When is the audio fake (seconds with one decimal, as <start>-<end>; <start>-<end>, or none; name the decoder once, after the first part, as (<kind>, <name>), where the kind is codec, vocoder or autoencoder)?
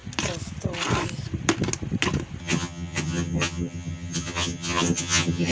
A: 2.4-5.5 (vocoder, HiFi-GAN)